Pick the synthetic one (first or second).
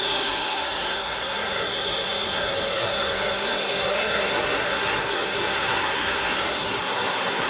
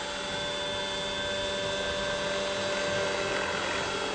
first